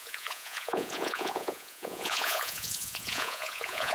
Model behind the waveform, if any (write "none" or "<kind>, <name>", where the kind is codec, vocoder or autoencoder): vocoder, Vocos